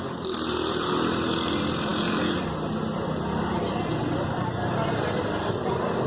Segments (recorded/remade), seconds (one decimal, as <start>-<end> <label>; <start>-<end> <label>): 0.0-6.1 recorded